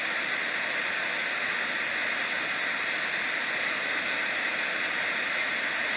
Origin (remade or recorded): recorded